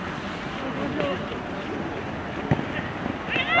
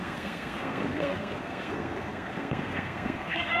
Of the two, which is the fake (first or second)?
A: second